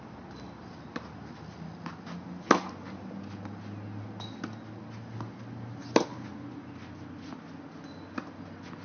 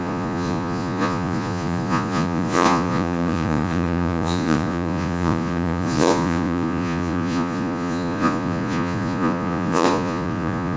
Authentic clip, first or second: first